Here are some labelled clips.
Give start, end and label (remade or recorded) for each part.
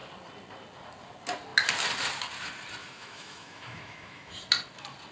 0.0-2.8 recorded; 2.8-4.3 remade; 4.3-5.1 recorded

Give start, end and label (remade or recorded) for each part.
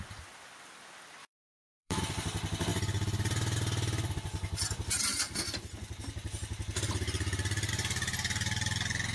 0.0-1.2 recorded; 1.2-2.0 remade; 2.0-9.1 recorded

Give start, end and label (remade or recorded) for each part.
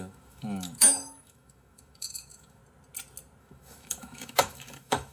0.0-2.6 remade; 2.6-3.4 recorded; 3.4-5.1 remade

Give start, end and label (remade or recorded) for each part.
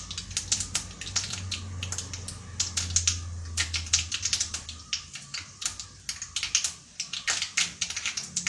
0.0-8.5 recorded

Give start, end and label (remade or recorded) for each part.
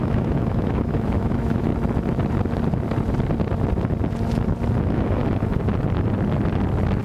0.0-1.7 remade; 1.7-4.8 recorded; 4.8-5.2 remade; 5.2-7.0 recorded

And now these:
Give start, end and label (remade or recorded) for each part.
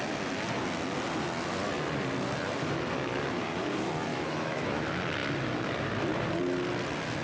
0.0-4.1 recorded; 4.1-4.8 remade; 4.8-7.2 recorded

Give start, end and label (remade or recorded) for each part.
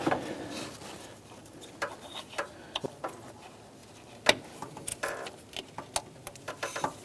0.0-7.0 recorded